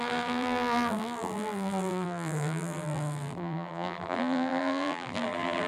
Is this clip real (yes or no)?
no